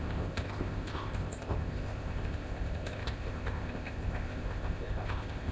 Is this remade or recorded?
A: remade